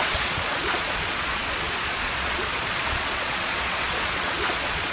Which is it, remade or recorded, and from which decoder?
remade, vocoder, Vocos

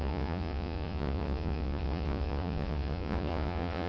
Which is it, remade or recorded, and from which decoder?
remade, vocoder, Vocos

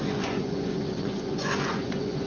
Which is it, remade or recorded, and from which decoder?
remade, vocoder, Vocos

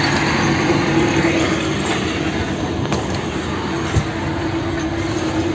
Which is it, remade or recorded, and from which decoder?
recorded